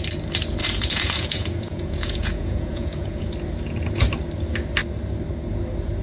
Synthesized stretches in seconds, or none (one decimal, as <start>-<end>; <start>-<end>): 0.6-3.3